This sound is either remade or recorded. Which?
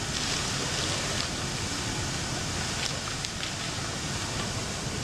recorded